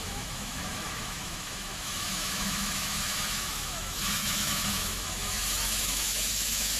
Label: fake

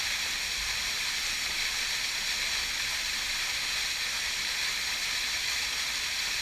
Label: real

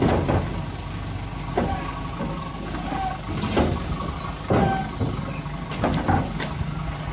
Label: real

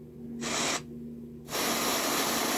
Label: real